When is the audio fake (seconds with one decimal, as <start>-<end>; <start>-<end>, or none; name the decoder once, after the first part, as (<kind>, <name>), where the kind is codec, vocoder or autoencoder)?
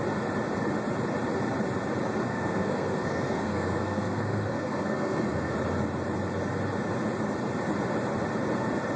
2.2-5.5 (codec, SNAC)